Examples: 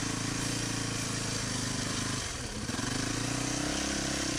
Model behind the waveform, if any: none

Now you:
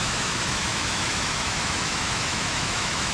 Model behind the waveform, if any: autoencoder, DAC-VAE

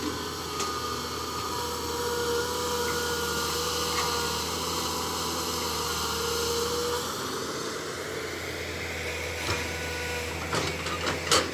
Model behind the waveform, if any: none